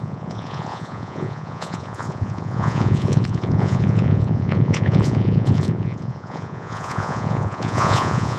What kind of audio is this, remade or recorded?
remade